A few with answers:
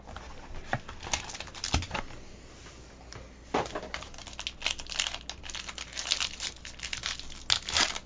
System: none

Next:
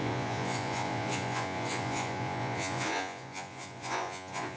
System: vocoder, Vocos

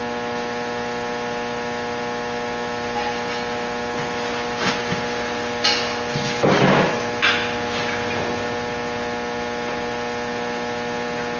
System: none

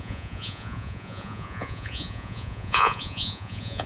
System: vocoder, Vocos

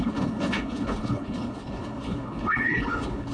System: codec, HILCodec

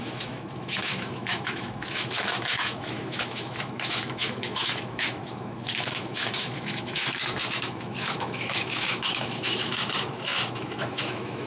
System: autoencoder, DAC-VAE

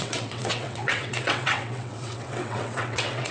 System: vocoder, WaveNeXt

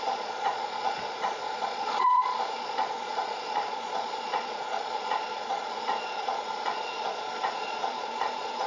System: vocoder, Vocos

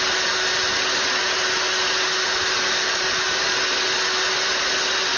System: none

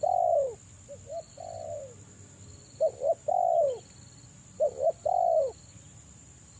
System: none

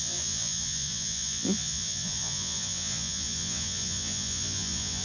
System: vocoder, Vocos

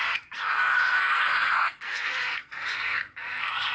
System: codec, SNAC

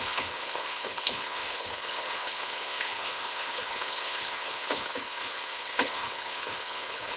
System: codec, HILCodec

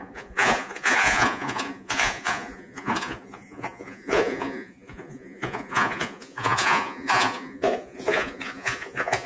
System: vocoder, Vocos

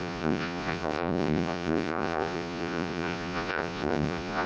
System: vocoder, Vocos